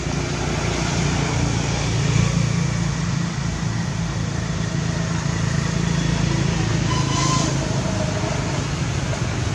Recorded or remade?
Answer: recorded